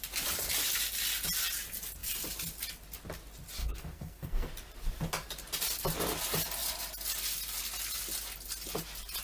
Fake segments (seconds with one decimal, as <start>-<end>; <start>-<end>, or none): 3.6-4.5